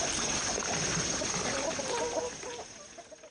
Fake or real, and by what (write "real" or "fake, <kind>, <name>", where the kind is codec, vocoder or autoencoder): real